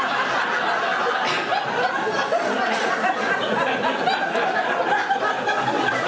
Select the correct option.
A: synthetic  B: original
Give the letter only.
B